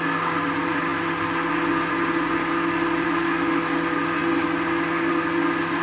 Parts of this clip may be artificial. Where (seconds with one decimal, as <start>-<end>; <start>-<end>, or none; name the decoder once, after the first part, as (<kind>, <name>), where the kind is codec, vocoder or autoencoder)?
none